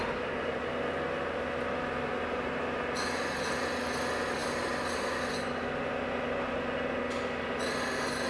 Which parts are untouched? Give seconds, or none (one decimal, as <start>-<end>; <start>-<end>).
0.0-8.3